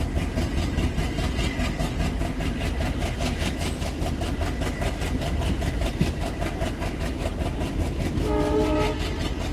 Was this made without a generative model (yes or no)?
yes